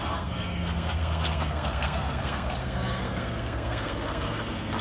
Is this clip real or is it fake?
fake